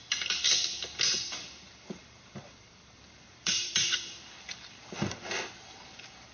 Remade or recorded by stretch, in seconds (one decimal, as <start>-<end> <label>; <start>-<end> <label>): 0.0-2.0 recorded; 2.0-4.2 remade; 4.2-6.3 recorded